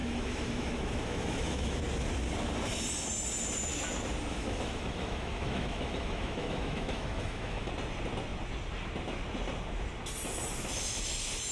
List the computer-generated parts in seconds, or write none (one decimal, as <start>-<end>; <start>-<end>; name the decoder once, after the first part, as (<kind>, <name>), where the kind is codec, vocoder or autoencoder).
0.0-1.8 (autoencoder, DAC-VAE); 4.3-7.7